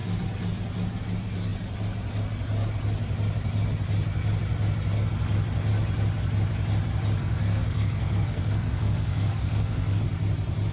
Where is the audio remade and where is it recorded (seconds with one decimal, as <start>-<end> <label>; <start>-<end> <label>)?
0.0-7.2 recorded; 7.2-10.0 remade; 10.0-10.7 recorded